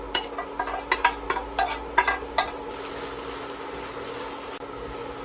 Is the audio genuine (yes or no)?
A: yes